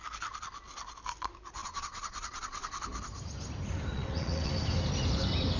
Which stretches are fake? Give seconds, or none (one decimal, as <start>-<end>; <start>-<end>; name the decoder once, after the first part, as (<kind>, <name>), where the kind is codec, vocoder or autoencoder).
1.6-2.7 (vocoder, WaveNeXt); 3.9-4.5

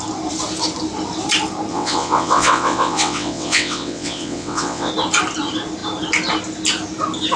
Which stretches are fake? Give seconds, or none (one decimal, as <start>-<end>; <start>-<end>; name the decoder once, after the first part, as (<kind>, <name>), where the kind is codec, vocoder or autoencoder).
1.7-4.9 (vocoder, WaveNeXt)

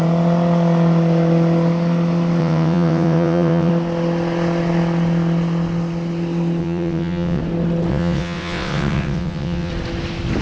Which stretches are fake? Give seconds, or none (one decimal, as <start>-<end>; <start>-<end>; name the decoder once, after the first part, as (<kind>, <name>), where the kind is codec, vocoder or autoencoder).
2.4-3.7 (vocoder, WaveNeXt); 6.6-7.4; 7.9-9.7

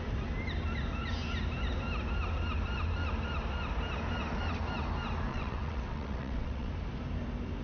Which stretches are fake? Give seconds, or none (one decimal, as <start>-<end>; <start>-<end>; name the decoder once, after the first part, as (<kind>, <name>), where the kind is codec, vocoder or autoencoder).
5.3-6.7 (vocoder, WaveNeXt)

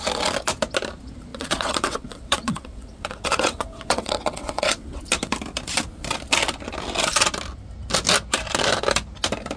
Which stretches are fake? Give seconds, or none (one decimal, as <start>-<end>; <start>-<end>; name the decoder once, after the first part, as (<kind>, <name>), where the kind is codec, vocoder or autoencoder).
1.3-5.0 (vocoder, WaveNeXt)